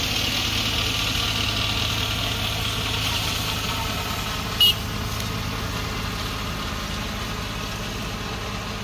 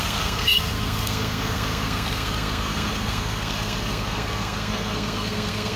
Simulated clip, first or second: second